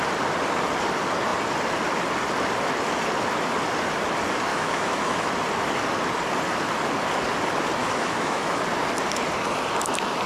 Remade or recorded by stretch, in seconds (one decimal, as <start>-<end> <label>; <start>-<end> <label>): 0.0-4.5 recorded; 4.5-5.3 remade; 5.3-7.8 recorded; 7.8-8.6 remade; 8.6-10.3 recorded

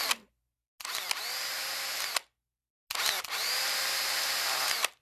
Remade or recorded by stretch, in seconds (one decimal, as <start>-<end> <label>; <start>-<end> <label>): 0.0-5.0 recorded